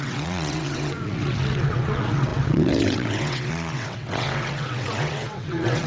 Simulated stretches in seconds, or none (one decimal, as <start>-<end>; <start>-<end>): 0.0-5.9